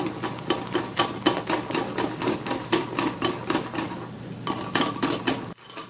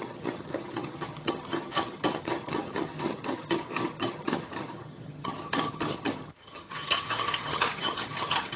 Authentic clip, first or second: first